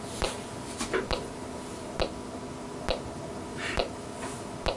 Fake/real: real